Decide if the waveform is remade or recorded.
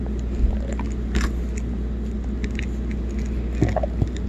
recorded